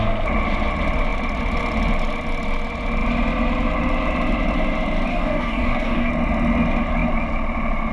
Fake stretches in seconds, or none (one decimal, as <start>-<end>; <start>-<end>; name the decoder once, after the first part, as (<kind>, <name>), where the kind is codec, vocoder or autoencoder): 5.1-6.1 (codec, DAC)